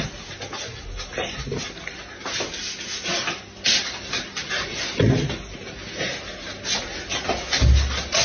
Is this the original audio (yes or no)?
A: yes